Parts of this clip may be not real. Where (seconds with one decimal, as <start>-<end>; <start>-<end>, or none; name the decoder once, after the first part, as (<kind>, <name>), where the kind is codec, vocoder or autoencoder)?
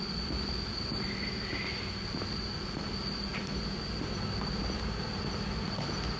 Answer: none